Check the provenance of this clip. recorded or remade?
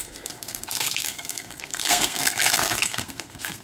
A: remade